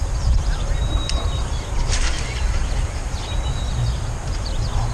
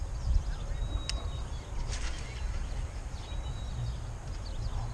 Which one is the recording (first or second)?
second